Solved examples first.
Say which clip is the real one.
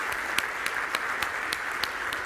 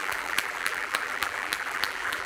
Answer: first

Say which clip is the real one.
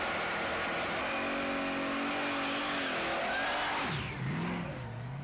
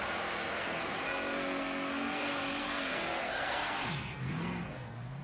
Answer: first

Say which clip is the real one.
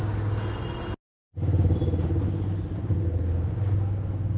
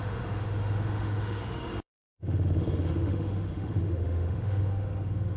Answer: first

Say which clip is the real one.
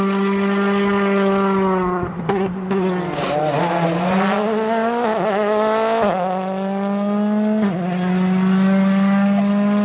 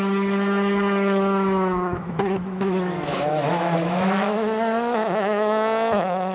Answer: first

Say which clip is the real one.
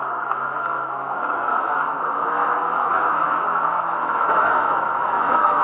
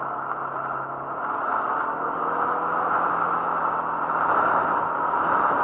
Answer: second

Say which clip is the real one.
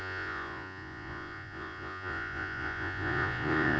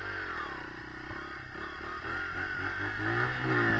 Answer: second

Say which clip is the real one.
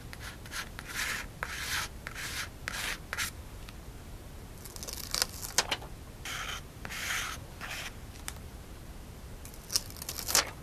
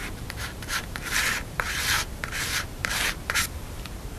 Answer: first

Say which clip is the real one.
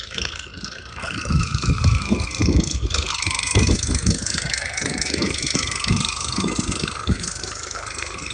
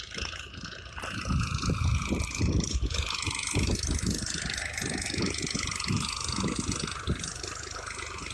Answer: second